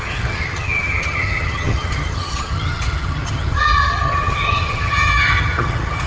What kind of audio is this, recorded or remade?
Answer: remade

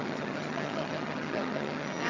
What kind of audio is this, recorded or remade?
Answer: remade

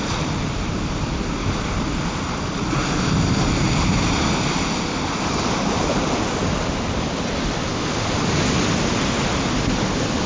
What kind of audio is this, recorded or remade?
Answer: recorded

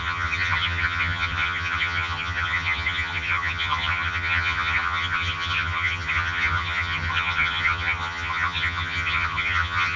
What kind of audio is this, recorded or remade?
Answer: remade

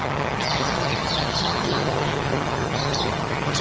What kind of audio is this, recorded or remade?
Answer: remade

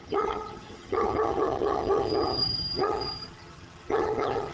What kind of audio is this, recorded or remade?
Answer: remade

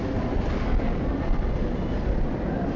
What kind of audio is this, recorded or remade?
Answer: recorded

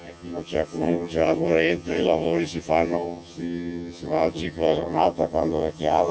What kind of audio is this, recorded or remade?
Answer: remade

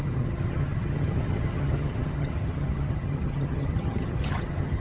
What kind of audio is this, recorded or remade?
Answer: remade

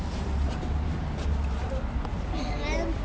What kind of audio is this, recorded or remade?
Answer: recorded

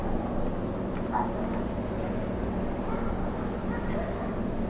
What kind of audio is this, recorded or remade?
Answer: recorded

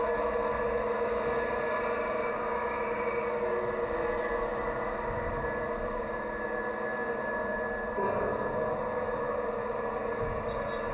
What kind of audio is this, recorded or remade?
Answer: recorded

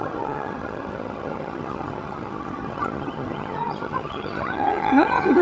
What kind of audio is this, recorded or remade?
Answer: remade